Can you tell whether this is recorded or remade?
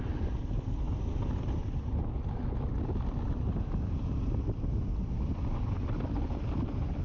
recorded